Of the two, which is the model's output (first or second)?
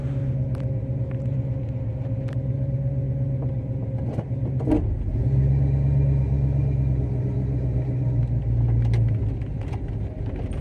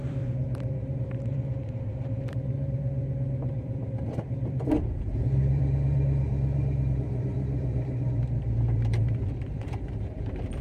second